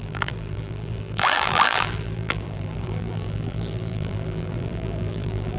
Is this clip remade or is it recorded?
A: remade